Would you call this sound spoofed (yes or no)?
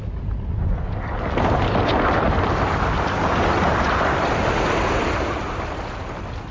no